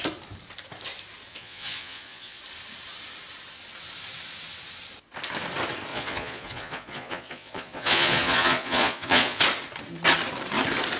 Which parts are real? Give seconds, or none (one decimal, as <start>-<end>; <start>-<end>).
0.0-1.3; 2.4-5.9; 9.4-11.0